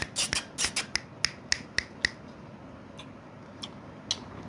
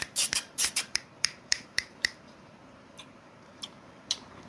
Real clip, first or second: first